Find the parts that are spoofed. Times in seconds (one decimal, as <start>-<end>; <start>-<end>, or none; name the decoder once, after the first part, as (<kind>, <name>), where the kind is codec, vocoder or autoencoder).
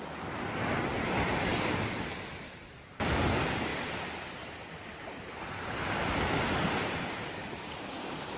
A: none